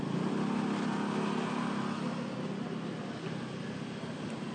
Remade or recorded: recorded